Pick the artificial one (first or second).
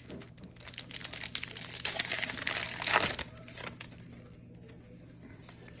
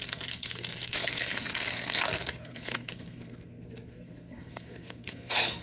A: second